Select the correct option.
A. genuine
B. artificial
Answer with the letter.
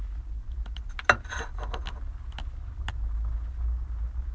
A